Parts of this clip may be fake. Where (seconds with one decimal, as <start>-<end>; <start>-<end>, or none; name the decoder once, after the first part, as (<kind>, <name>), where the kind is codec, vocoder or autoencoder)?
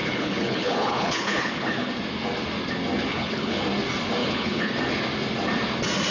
0.0-1.9 (codec, HILCodec); 3.1-3.6; 4.2-4.8